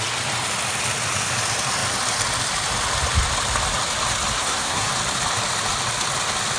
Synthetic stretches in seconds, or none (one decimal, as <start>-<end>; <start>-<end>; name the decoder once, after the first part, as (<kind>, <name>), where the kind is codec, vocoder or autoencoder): 4.4-4.9 (codec, SNAC)

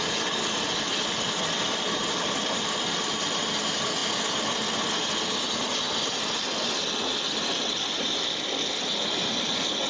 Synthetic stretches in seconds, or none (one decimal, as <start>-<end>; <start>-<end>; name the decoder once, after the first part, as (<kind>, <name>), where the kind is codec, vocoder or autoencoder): none

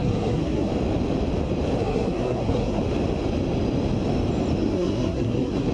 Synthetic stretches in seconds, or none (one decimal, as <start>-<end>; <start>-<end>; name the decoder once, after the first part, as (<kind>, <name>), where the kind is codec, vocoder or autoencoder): 0.0-0.7 (codec, SNAC); 1.8-2.8; 4.6-5.7